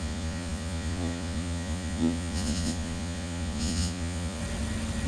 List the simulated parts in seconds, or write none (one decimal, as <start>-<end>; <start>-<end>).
0.0-4.4